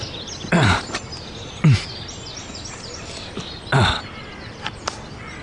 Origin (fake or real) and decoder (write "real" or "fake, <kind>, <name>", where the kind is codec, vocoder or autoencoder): real